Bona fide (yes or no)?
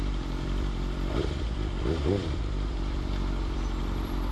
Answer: no